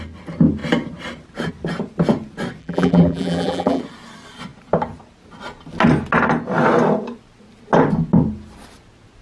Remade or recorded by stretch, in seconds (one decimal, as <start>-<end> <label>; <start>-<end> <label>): 0.0-2.6 recorded; 2.6-3.8 remade; 3.8-9.2 recorded